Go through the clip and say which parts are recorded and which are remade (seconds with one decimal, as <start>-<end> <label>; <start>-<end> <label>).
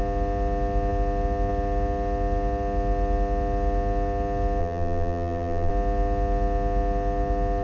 0.0-4.6 recorded; 4.6-5.7 remade; 5.7-7.6 recorded